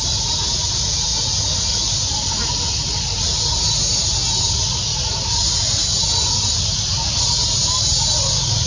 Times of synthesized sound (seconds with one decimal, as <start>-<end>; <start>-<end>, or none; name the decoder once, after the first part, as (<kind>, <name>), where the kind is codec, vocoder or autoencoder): none